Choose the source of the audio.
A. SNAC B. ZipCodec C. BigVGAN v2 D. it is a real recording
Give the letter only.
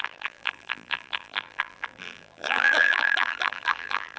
C